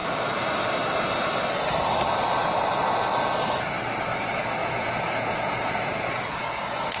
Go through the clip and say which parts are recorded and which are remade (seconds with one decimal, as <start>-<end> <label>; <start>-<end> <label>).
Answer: 0.0-4.6 recorded; 4.6-6.4 remade; 6.4-7.0 recorded